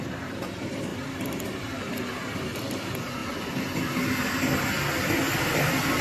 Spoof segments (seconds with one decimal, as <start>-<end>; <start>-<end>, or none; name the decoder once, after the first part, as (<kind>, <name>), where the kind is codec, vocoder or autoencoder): 0.0-3.2 (vocoder, BigVGAN v2); 4.9-6.0